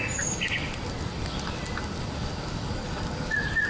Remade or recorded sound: recorded